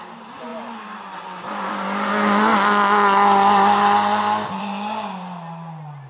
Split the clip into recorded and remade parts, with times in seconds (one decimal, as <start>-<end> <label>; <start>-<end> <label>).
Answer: 0.0-0.5 recorded; 0.5-1.7 remade; 1.7-6.1 recorded